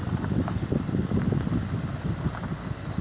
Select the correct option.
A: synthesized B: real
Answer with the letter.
B